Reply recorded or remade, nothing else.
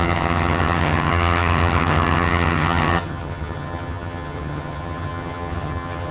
remade